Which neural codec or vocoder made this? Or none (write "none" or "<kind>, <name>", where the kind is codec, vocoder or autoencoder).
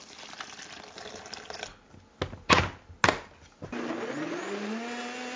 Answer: none